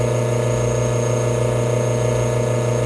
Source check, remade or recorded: recorded